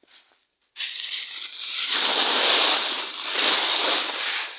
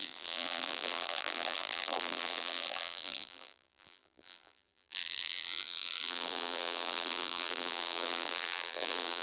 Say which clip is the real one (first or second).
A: first